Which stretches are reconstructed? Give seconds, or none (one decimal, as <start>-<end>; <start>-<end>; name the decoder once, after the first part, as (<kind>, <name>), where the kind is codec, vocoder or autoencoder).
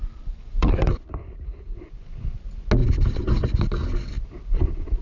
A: 0.0-0.9 (vocoder, BigVGAN v2); 2.8-3.6